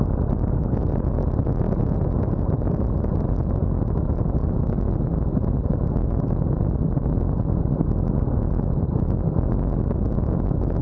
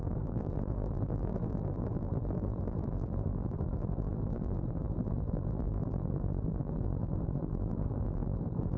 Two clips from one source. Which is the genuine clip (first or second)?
first